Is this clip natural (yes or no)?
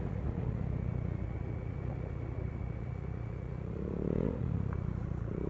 no